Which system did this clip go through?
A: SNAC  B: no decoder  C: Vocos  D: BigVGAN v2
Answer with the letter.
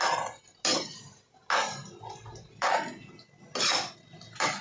B